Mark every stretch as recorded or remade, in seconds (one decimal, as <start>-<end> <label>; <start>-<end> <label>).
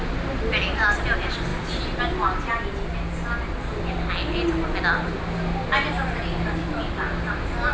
0.0-7.7 recorded